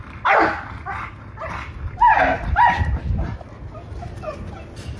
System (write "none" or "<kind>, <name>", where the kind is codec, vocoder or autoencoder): none